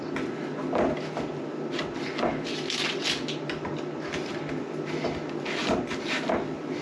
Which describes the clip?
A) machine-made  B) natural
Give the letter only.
B